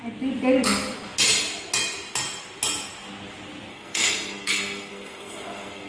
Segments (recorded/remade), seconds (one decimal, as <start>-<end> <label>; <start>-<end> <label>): 0.0-3.7 recorded; 3.7-5.9 remade